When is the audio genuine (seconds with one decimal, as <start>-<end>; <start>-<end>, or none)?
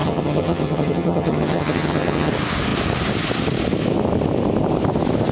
2.3-5.3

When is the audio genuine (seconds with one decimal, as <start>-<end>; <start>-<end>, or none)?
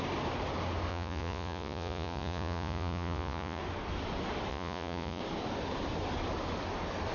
0.0-0.9; 3.6-4.5; 5.2-7.1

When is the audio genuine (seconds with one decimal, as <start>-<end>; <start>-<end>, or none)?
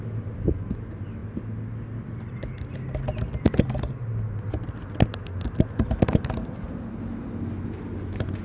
0.0-8.4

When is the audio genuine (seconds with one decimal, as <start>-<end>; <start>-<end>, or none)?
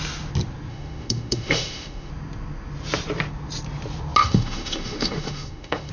0.0-0.7; 2.1-4.2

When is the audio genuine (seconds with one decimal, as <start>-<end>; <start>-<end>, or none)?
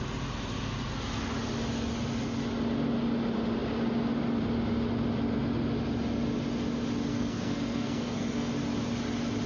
0.0-7.1; 8.5-9.5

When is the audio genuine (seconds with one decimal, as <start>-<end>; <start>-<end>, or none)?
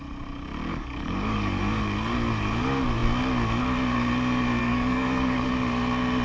0.0-0.7; 1.6-4.6; 5.5-6.2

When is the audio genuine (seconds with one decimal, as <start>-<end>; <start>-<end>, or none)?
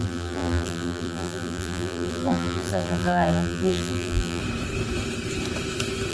4.4-6.1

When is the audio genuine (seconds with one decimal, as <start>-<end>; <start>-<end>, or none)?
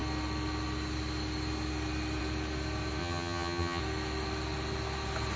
0.0-3.0; 3.8-5.4